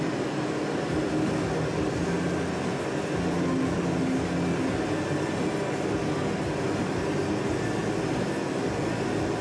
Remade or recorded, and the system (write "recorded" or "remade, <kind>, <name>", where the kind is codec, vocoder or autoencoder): recorded